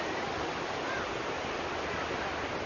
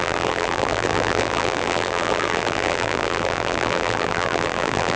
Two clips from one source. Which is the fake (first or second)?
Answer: second